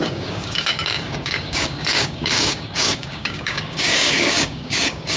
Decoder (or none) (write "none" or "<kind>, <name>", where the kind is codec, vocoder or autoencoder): codec, DAC